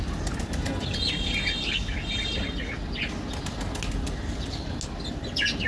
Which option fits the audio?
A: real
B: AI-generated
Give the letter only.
A